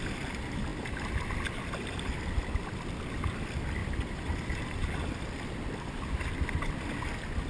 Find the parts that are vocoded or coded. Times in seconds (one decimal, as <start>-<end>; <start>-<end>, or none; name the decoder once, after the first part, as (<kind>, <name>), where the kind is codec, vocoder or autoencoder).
none